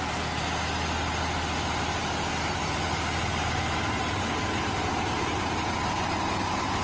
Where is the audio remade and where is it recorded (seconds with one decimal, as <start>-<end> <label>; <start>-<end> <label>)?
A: 0.0-6.8 recorded